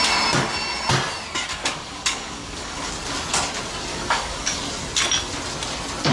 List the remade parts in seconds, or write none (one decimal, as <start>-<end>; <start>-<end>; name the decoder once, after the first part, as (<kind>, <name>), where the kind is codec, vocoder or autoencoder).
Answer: 1.5-2.9 (codec, DAC); 3.9-4.6